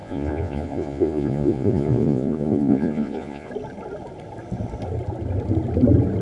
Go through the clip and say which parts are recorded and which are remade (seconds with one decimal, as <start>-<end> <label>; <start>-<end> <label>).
0.0-3.5 remade; 3.5-6.2 recorded